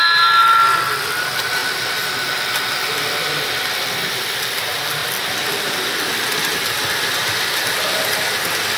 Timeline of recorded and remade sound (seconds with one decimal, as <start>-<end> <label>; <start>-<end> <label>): 0.0-8.8 recorded